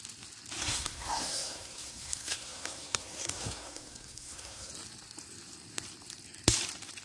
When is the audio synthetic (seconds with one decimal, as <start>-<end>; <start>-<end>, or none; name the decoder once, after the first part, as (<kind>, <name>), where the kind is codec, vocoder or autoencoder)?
0.6-4.7 (codec, SNAC)